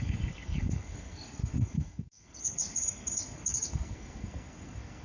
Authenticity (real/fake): fake